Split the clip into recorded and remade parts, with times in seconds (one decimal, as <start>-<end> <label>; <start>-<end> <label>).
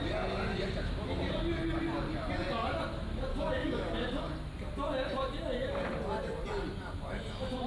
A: 0.0-3.3 recorded; 3.3-4.2 remade; 4.2-7.7 recorded